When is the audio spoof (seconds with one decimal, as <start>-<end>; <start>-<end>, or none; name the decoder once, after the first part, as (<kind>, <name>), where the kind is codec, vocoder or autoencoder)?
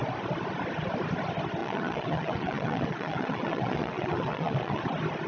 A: 1.6-4.8 (vocoder, Vocos)